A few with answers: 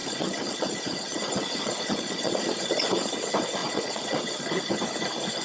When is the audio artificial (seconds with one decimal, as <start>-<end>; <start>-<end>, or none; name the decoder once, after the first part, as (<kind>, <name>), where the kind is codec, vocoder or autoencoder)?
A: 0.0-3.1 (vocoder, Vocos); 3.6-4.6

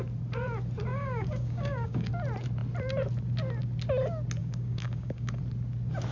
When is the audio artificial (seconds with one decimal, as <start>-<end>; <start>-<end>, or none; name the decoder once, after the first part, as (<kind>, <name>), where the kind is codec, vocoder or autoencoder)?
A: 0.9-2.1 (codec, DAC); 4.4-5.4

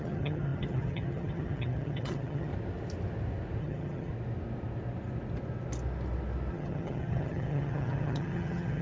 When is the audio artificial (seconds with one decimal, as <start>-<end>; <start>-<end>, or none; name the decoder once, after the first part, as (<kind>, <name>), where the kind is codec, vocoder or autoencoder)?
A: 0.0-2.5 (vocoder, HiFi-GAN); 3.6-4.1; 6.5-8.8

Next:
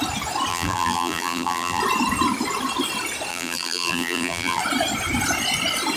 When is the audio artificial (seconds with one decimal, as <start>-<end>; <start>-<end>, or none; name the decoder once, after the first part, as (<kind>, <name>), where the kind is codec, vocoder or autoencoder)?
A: 0.5-1.8 (vocoder, BigVGAN v2); 3.3-4.6

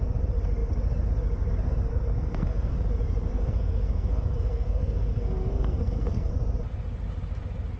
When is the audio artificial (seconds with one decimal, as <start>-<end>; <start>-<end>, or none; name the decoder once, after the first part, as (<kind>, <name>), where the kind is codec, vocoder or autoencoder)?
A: 1.9-2.7 (codec, SNAC); 3.3-6.3